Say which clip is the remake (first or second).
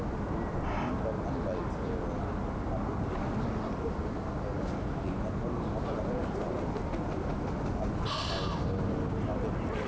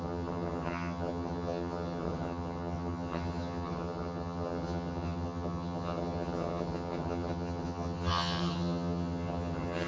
second